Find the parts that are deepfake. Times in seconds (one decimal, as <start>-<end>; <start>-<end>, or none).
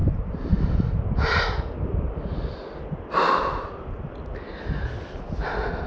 none